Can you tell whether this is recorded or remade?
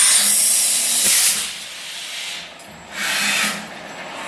recorded